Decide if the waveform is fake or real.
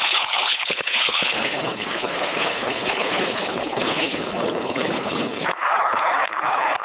fake